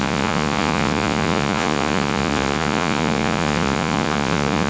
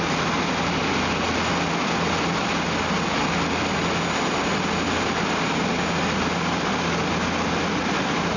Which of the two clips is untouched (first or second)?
second